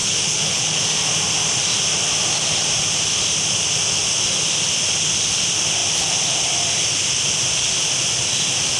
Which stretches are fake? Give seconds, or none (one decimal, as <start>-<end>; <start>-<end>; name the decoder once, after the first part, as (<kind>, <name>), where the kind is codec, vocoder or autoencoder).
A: 0.0-0.8 (codec, HILCodec)